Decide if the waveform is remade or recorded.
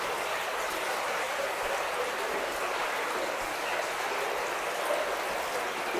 recorded